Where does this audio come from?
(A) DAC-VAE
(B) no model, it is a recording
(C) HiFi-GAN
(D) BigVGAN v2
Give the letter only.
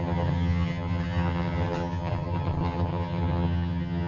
C